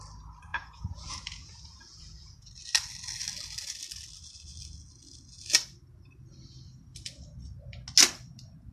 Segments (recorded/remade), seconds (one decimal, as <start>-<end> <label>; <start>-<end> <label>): 0.0-0.5 recorded; 0.5-2.5 remade; 2.5-8.7 recorded